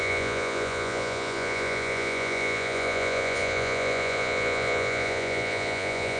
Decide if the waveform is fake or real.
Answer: fake